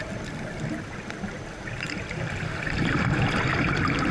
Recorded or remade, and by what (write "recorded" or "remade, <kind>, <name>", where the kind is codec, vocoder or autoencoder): recorded